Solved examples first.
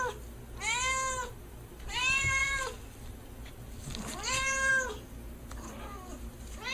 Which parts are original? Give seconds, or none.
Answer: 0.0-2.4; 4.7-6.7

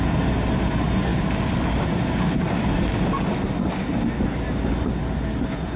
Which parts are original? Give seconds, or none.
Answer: 0.0-5.8

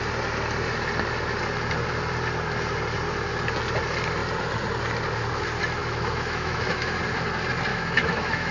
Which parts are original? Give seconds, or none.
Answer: 0.0-5.8; 7.0-7.7

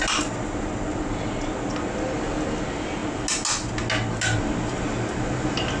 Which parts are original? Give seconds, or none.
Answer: 0.0-5.8

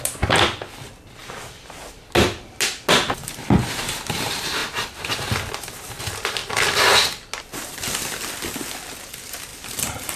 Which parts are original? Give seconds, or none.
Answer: 0.0-9.5

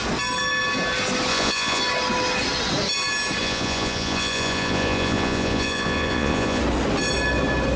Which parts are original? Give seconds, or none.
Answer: 0.0-1.3; 1.8-3.4; 6.6-7.8

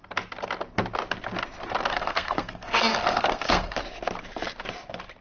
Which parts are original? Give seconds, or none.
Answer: 0.0-1.9; 3.8-5.2

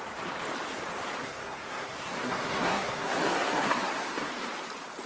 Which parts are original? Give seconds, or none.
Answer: 0.0-1.2; 4.3-5.1